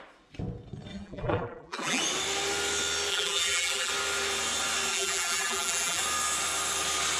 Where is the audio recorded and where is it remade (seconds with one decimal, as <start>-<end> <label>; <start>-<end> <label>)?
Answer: 0.0-0.9 recorded; 0.9-2.0 remade; 2.0-3.1 recorded; 3.1-3.9 remade; 3.9-4.9 recorded; 4.9-6.0 remade; 6.0-7.2 recorded